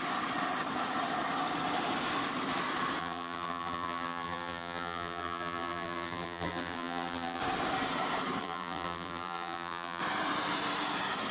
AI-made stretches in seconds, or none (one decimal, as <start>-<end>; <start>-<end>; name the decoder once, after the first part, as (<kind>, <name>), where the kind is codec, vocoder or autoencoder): 3.0-7.4 (vocoder, BigVGAN v2); 8.4-10.0